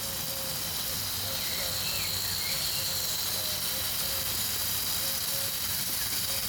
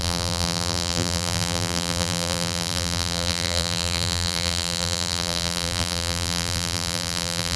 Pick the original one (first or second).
first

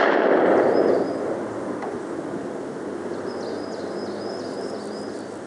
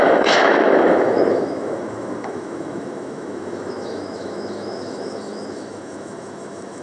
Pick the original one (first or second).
first